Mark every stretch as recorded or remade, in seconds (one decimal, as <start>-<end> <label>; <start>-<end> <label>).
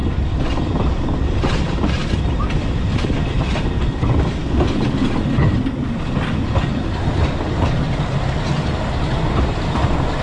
0.0-2.9 remade; 2.9-10.2 recorded